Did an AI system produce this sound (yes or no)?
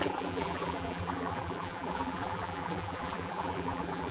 yes